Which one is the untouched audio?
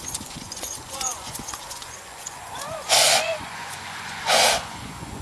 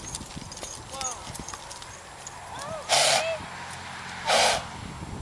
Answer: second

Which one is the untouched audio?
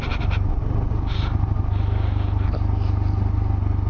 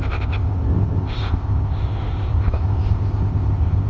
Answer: first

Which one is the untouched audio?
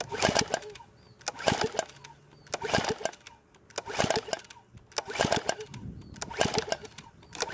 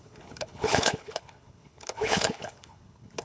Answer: first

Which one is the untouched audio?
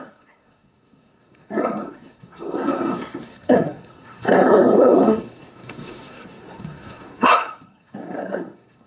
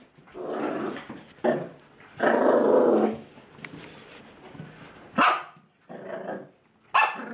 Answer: second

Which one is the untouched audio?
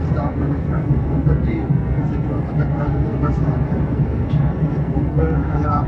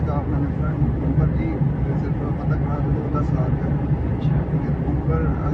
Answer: second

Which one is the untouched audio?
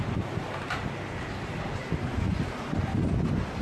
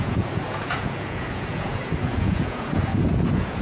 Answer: first